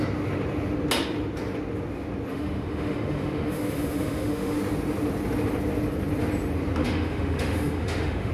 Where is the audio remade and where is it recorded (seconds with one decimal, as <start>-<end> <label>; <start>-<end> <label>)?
0.0-2.3 recorded; 2.3-4.6 remade; 4.6-6.8 recorded; 6.8-8.3 remade